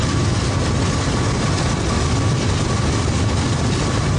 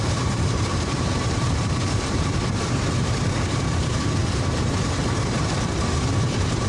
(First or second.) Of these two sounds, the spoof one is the second